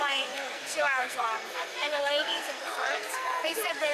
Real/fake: fake